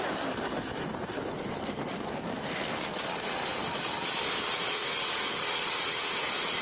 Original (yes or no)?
yes